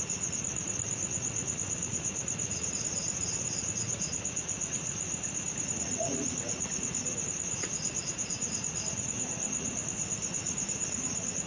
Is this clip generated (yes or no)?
yes